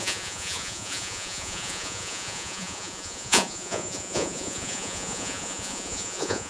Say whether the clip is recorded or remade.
remade